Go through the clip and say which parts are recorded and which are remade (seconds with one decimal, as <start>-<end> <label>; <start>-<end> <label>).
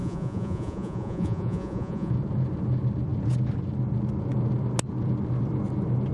0.0-2.1 remade; 2.1-6.1 recorded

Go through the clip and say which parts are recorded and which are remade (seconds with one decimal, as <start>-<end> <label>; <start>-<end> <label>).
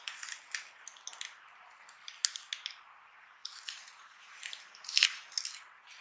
0.0-3.4 recorded; 3.4-4.3 remade; 4.3-6.0 recorded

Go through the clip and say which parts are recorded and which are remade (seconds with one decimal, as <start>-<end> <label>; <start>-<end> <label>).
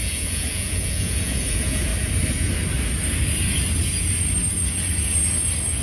0.0-1.9 remade; 1.9-5.8 recorded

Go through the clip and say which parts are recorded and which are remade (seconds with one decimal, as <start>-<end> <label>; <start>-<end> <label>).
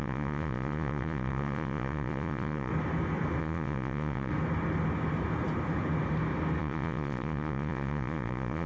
0.0-2.7 remade; 2.7-3.4 recorded; 3.4-4.3 remade; 4.3-6.6 recorded; 6.6-8.7 remade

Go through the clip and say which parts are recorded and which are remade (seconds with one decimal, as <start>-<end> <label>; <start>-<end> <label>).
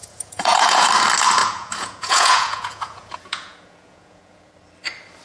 0.0-0.9 remade; 0.9-1.4 recorded; 1.4-4.5 remade; 4.5-5.2 recorded